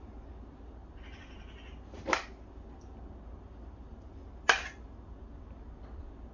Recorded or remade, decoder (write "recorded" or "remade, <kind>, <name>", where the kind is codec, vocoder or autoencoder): recorded